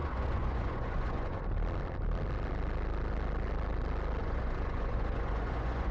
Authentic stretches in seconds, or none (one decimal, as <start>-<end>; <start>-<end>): 1.4-4.2